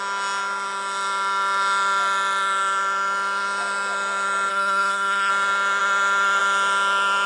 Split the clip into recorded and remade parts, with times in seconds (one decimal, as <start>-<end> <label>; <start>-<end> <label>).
0.0-4.5 recorded; 4.5-5.3 remade; 5.3-7.3 recorded